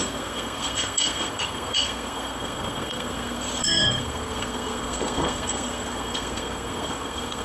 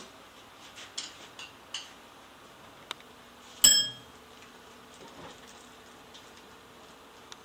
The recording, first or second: second